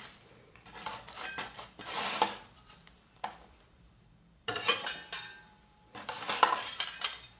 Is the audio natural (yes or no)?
no